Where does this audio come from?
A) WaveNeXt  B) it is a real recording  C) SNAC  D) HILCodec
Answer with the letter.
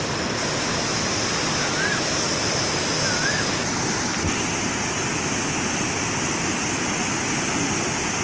B